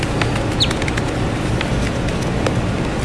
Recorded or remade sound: recorded